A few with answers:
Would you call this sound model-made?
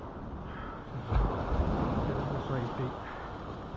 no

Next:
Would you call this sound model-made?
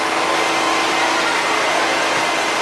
no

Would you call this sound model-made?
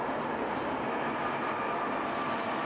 no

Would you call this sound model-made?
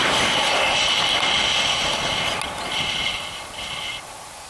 no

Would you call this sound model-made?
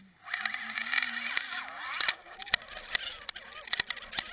no